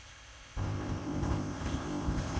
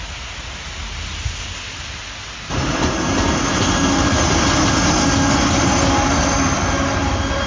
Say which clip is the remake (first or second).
first